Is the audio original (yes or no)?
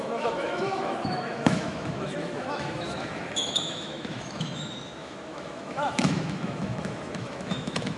no